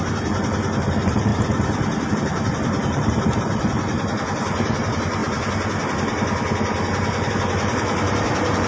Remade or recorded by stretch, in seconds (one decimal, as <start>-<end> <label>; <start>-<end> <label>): 0.0-1.3 remade; 1.3-2.1 recorded; 2.1-3.9 remade; 3.9-4.8 recorded; 4.8-5.2 remade; 5.2-7.3 recorded; 7.3-8.7 remade